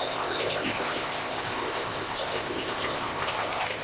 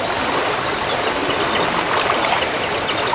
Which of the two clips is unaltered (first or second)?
second